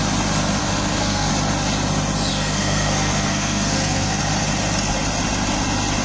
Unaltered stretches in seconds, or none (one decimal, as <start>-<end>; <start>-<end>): 0.0-0.6; 1.3-2.3; 4.2-6.0